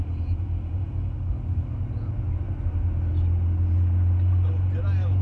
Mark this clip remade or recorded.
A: recorded